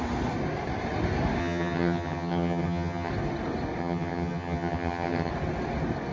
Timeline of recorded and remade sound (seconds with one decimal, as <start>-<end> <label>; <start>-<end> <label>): 0.0-1.4 recorded; 1.4-3.1 remade; 3.1-3.8 recorded; 3.8-5.3 remade; 5.3-6.1 recorded